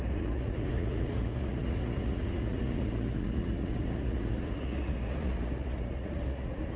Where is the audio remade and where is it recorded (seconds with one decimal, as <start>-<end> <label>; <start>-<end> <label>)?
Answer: 0.0-6.8 remade